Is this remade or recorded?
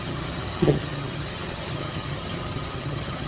remade